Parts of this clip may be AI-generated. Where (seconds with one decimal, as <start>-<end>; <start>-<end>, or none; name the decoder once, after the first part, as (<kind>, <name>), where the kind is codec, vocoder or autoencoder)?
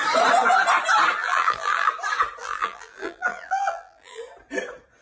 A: 1.2-1.9 (vocoder, BigVGAN v2); 2.4-4.2